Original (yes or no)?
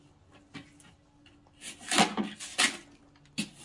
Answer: yes